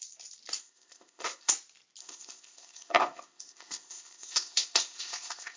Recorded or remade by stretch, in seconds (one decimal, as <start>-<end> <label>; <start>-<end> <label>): 0.0-0.6 recorded; 0.6-1.5 remade; 1.5-2.0 recorded; 2.0-5.6 remade